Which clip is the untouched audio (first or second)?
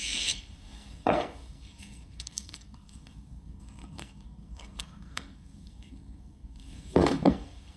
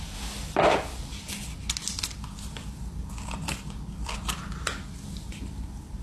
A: second